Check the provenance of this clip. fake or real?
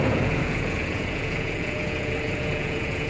fake